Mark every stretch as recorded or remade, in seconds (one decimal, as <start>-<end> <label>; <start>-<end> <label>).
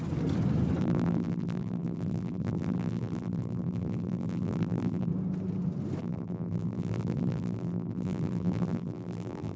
0.0-0.8 recorded; 0.8-5.1 remade; 5.1-6.0 recorded; 6.0-9.6 remade